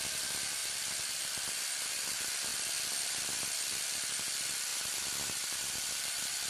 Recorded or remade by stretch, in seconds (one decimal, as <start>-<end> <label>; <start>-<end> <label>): 0.0-2.5 recorded; 2.5-3.6 remade; 3.6-4.7 recorded; 4.7-5.8 remade; 5.8-6.5 recorded